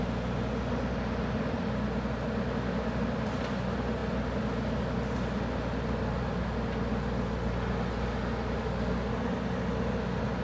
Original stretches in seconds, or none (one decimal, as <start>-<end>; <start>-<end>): 0.0-10.4